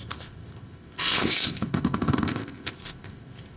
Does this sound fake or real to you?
fake